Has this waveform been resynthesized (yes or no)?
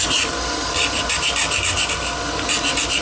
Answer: no